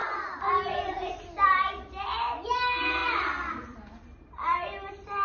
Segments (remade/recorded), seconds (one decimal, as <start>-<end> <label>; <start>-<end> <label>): 0.0-3.0 recorded; 3.0-4.3 remade; 4.3-5.2 recorded